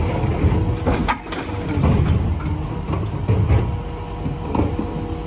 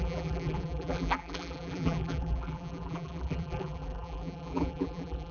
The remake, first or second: second